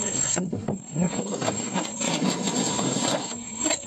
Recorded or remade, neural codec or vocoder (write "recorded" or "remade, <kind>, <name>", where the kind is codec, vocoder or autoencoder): remade, codec, SNAC